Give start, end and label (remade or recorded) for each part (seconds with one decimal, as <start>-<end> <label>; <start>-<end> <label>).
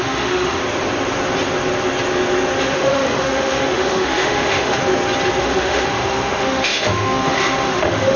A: 0.0-0.6 remade; 0.6-2.6 recorded; 2.6-4.8 remade; 4.8-5.4 recorded; 5.4-8.2 remade